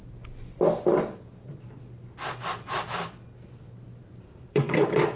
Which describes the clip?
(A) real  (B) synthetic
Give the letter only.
B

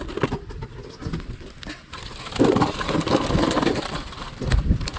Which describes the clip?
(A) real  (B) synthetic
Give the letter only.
A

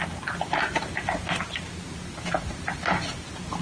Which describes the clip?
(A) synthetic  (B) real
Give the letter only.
B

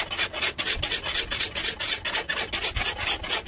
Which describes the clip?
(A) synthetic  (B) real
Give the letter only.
B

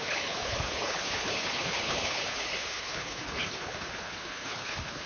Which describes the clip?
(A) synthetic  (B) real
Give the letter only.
A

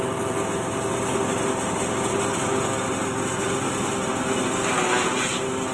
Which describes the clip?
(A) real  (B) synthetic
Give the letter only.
A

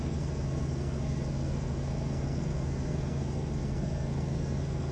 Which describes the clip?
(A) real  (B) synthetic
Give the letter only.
B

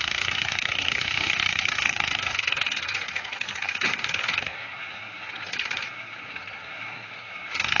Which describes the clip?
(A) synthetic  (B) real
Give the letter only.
A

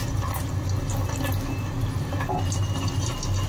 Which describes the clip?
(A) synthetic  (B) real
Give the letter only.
B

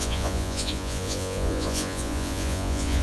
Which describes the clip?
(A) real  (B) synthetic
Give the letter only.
B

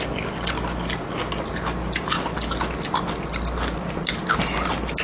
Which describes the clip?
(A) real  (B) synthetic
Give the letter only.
A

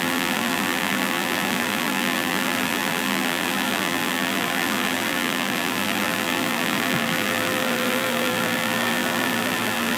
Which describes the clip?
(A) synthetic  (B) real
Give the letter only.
A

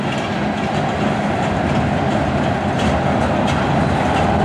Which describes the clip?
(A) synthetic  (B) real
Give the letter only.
B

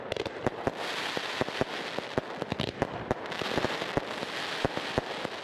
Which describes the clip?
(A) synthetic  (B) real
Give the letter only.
B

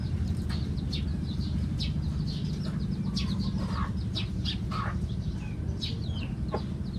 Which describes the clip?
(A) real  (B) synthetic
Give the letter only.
A